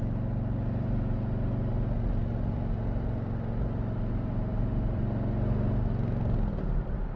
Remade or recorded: recorded